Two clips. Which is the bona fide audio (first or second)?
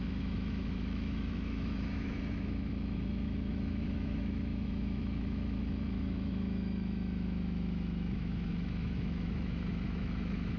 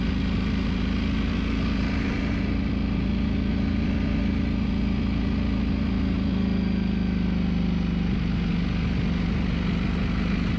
second